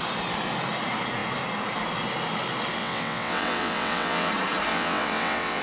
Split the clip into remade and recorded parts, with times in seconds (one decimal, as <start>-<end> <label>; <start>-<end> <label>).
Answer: 0.0-2.8 recorded; 2.8-4.3 remade; 4.3-4.7 recorded; 4.7-5.6 remade